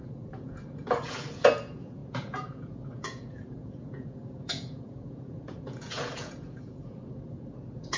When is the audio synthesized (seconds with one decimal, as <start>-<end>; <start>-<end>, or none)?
0.0-8.0